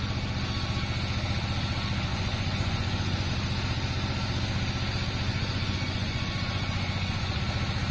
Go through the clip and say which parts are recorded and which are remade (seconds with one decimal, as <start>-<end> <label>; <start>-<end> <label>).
0.0-2.1 recorded; 2.1-3.3 remade; 3.3-5.3 recorded; 5.3-7.4 remade; 7.4-7.9 recorded